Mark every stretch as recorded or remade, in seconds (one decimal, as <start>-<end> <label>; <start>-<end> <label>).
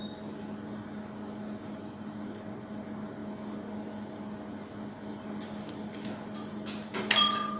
0.0-7.6 recorded